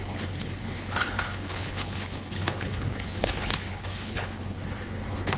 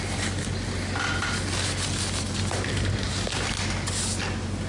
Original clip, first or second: second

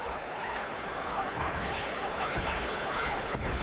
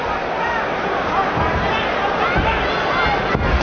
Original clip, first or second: second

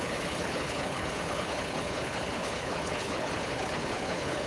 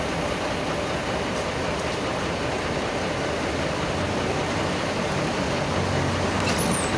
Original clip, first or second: second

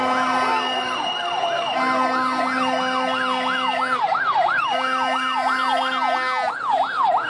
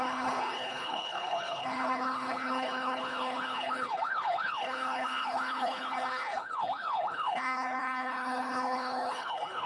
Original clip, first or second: first